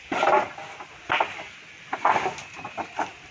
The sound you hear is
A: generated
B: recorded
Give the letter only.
B